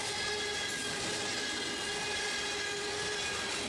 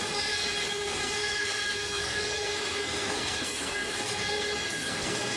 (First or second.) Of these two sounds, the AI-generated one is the second